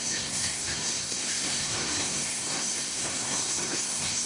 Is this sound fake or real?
fake